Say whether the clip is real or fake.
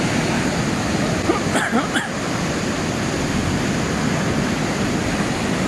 real